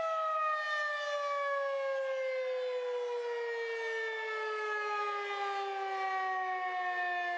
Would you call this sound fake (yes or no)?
no